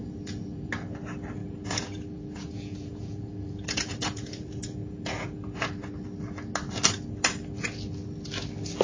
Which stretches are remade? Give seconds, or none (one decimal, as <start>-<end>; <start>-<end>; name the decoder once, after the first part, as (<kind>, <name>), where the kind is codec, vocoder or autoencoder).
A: 0.0-0.7 (vocoder, Vocos); 1.4-5.9